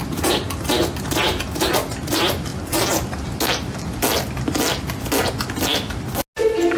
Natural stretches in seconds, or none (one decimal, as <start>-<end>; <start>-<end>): 0.0-6.8